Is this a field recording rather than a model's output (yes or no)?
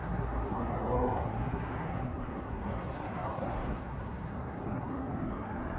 no